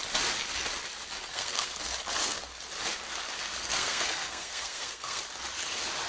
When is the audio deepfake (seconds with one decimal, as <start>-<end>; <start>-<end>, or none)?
1.3-1.8; 3.6-5.2